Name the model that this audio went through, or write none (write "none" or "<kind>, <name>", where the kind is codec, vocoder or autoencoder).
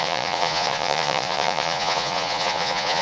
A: vocoder, Vocos